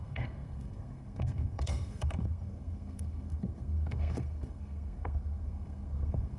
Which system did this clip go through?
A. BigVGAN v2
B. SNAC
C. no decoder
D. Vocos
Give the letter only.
B